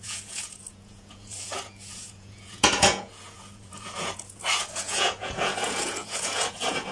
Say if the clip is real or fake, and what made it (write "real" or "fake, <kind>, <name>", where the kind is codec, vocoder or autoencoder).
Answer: fake, vocoder, Vocos